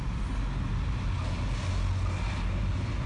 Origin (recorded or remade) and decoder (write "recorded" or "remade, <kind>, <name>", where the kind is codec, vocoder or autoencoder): recorded